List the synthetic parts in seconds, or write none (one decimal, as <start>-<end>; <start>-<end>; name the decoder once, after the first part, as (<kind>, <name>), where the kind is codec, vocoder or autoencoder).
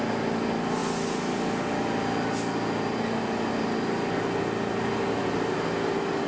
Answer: none